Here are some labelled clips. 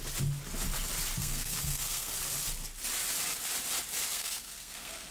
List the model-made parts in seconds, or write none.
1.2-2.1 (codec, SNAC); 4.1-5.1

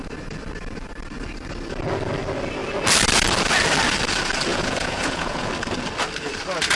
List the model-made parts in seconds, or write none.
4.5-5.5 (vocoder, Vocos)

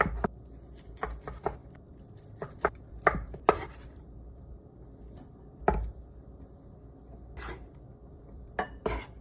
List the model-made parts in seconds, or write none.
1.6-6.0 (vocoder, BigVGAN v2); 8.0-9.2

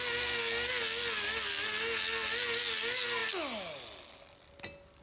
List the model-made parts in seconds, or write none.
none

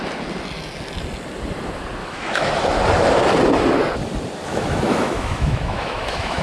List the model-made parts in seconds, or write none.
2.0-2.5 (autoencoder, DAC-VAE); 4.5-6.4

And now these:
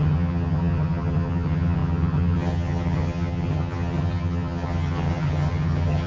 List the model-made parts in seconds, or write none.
0.0-6.1 (vocoder, HiFi-GAN)

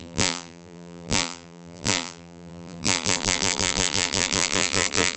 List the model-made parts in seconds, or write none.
0.0-5.2 (vocoder, BigVGAN v2)

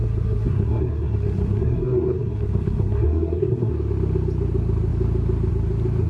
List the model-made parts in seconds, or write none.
0.0-3.7 (codec, SNAC)